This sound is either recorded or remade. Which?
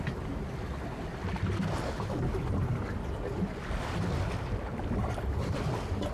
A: recorded